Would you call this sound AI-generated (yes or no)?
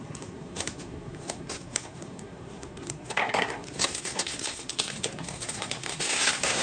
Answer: yes